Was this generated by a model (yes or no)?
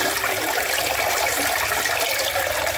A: no